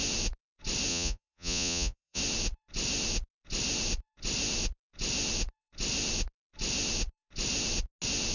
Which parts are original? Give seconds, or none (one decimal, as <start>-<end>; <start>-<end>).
0.0-0.9; 2.2-8.3